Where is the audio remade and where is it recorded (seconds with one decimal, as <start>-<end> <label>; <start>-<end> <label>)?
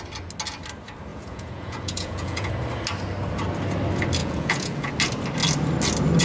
0.0-1.1 recorded; 1.1-2.5 remade; 2.5-4.2 recorded; 4.2-4.9 remade; 4.9-6.2 recorded